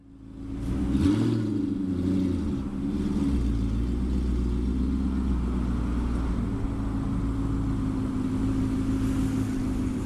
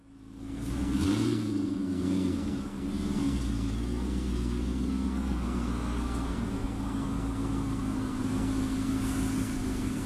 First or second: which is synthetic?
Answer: second